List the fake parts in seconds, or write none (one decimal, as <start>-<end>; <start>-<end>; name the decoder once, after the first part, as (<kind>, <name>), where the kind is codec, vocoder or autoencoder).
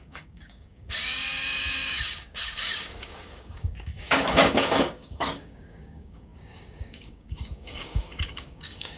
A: 0.0-9.0 (codec, DAC)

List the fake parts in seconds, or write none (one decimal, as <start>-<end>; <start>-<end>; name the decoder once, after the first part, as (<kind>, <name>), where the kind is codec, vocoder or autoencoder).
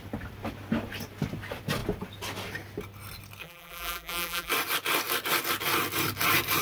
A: 3.4-4.5 (vocoder, BigVGAN v2)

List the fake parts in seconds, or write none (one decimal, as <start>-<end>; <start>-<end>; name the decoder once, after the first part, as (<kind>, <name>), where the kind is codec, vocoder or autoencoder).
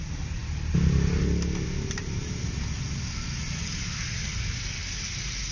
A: none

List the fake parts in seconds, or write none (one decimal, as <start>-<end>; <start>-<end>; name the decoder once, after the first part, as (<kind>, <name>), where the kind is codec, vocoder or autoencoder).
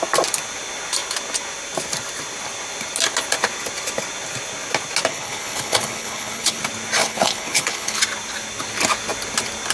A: 5.1-6.6 (codec, HILCodec); 7.0-8.0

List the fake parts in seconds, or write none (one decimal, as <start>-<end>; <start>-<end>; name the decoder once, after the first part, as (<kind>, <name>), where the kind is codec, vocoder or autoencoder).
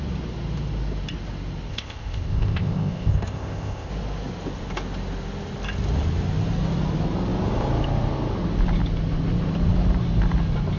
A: 1.7-3.9 (codec, ZipCodec)